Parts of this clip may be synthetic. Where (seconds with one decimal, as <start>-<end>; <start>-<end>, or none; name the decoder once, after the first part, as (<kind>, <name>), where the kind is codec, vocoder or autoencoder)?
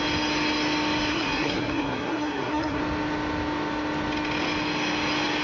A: 1.1-2.8 (codec, SNAC)